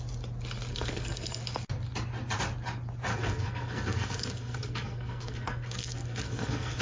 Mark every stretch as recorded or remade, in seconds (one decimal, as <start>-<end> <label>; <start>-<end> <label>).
0.0-0.7 recorded; 0.7-1.4 remade; 1.4-3.1 recorded; 3.1-6.8 remade